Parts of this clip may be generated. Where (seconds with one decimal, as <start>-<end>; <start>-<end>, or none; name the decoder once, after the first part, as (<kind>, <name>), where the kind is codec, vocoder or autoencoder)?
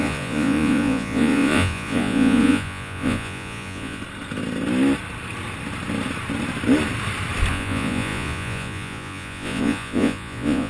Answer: 0.0-4.0 (vocoder, Vocos); 7.5-10.7